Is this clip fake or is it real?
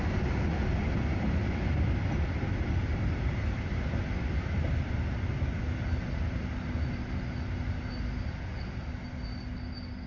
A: real